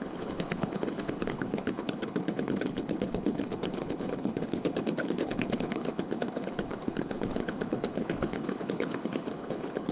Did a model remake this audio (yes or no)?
yes